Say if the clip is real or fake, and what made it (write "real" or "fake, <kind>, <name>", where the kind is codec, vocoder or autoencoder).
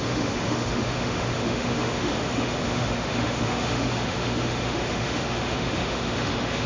fake, autoencoder, DAC-VAE